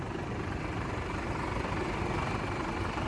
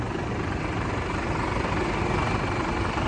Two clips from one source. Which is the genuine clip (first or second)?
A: second